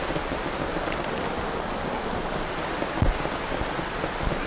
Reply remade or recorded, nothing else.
recorded